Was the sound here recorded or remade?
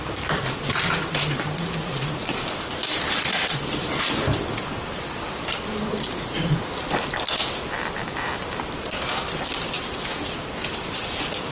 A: remade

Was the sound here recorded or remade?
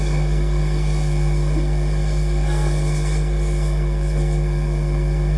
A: remade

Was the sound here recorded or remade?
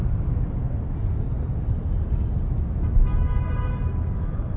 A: recorded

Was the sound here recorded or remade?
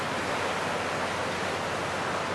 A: recorded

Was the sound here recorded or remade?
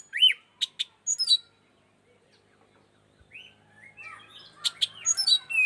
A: recorded